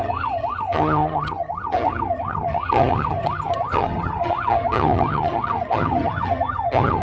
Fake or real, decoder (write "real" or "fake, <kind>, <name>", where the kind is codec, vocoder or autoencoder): fake, vocoder, HiFi-GAN